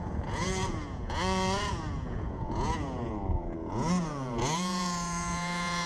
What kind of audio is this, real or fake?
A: fake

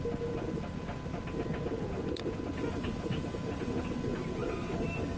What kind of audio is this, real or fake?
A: real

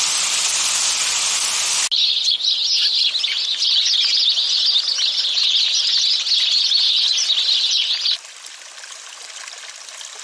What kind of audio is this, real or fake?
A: real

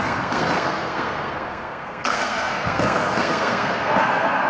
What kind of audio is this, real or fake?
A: fake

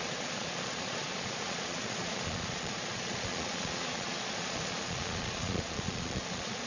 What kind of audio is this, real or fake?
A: fake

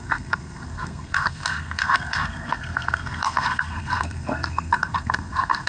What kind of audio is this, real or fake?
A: fake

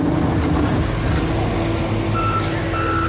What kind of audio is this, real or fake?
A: real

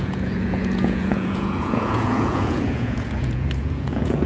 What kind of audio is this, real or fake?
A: fake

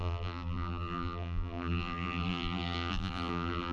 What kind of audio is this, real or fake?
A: fake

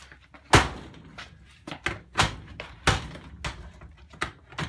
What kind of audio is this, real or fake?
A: real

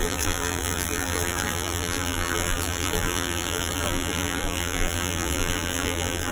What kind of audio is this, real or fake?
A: fake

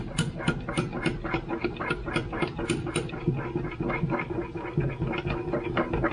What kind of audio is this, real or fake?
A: real